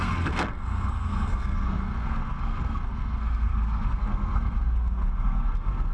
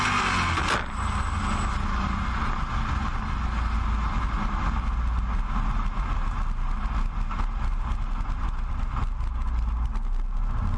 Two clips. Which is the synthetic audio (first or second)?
first